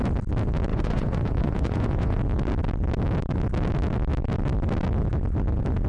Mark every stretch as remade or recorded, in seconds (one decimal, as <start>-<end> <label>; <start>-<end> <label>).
0.0-0.7 recorded; 0.7-2.2 remade; 2.2-5.9 recorded